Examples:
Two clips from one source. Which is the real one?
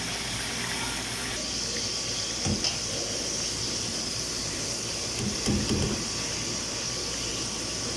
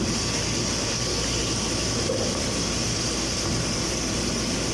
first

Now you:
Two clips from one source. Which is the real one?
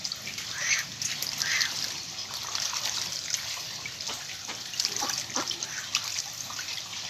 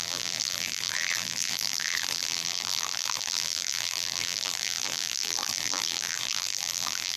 first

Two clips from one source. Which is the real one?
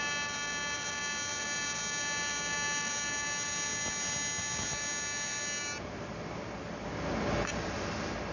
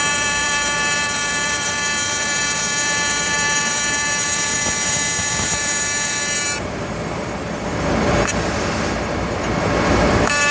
first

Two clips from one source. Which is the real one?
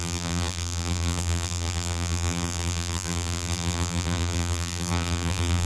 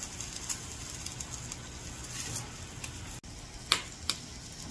second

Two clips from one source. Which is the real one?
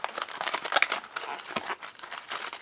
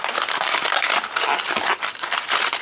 first